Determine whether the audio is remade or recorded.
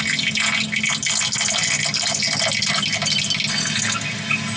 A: recorded